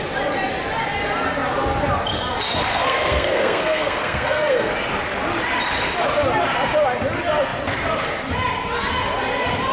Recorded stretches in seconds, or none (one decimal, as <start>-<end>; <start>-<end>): 0.0-2.7; 4.7-9.7